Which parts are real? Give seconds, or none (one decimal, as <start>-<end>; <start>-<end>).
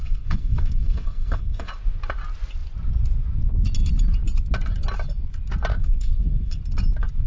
1.7-5.7; 6.6-7.3